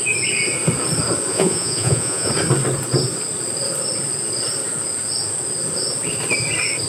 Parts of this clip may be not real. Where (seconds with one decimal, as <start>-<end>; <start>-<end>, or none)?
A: 1.3-2.3